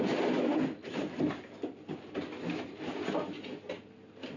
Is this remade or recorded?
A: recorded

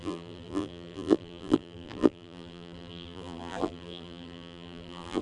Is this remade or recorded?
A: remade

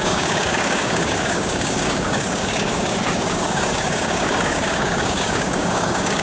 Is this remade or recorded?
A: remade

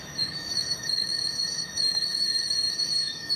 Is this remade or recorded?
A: remade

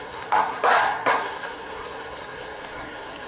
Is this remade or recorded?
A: remade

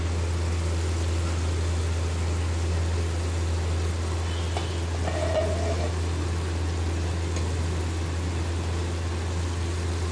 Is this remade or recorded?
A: recorded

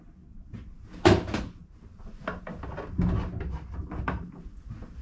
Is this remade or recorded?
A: recorded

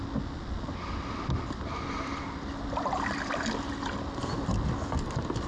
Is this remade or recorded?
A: recorded